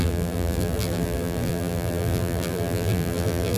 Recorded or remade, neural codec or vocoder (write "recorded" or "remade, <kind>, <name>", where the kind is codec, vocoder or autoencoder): remade, vocoder, BigVGAN v2